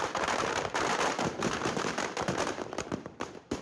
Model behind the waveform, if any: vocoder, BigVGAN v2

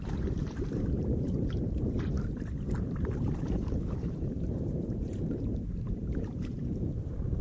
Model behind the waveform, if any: vocoder, BigVGAN v2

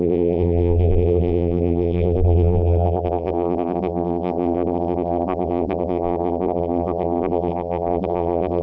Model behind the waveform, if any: vocoder, BigVGAN v2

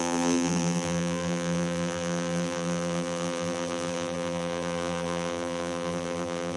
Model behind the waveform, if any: vocoder, BigVGAN v2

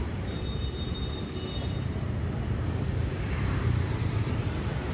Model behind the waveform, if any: vocoder, BigVGAN v2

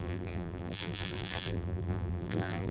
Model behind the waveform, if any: vocoder, BigVGAN v2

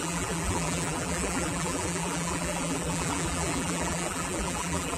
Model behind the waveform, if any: vocoder, BigVGAN v2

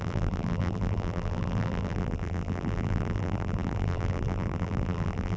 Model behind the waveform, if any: vocoder, BigVGAN v2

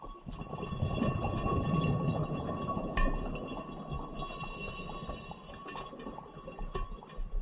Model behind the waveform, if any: none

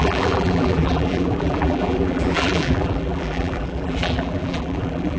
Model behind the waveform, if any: vocoder, BigVGAN v2